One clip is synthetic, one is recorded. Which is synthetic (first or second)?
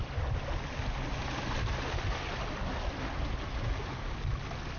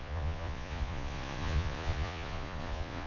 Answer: second